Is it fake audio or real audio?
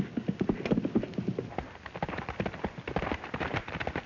real